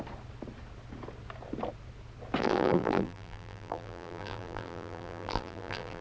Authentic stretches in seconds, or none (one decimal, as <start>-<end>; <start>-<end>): 0.0-2.4